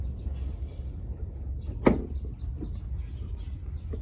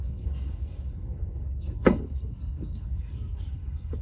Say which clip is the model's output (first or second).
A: second